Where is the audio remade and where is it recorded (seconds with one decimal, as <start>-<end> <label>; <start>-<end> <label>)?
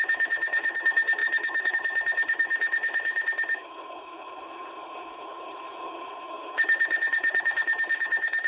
0.0-8.5 remade